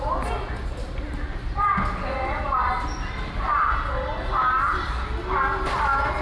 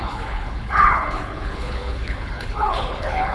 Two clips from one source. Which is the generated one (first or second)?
second